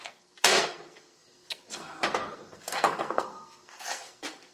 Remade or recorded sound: remade